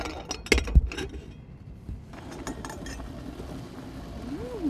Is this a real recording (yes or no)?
yes